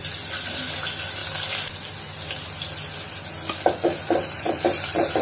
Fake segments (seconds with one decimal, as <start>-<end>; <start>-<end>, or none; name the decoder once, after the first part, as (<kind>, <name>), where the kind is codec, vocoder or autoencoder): none